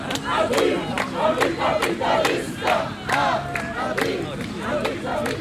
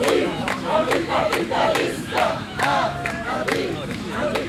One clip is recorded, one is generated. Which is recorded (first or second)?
first